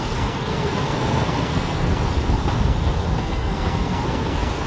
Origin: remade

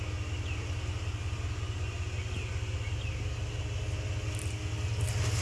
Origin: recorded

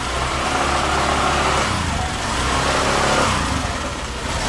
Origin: recorded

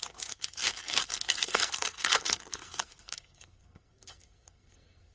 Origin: remade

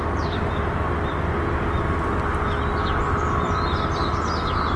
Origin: recorded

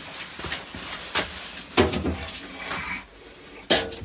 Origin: recorded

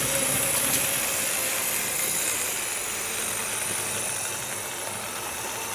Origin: recorded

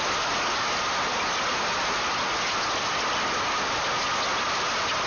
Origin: recorded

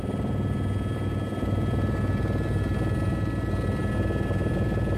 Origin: recorded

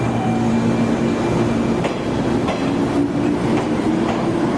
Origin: recorded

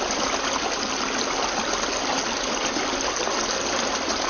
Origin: recorded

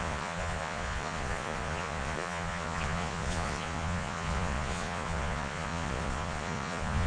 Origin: remade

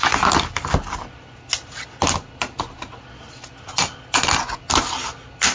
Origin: recorded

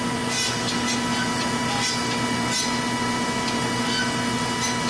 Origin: recorded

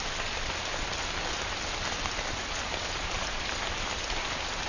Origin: recorded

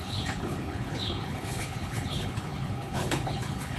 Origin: remade